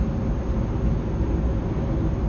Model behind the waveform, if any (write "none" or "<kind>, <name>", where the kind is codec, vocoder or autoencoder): none